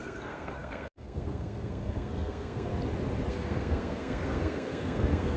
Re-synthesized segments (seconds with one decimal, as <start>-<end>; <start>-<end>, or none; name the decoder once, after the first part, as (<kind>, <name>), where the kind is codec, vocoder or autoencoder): 0.0-2.7 (codec, SNAC); 3.3-5.4